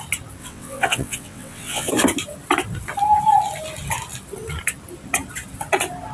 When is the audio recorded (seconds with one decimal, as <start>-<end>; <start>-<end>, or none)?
0.0-0.4; 1.9-6.1